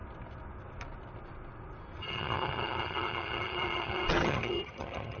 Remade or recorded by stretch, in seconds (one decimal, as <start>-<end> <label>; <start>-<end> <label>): 0.0-2.0 recorded; 2.0-5.2 remade